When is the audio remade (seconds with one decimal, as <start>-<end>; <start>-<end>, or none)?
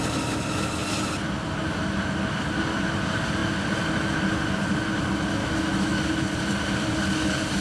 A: 5.4-6.0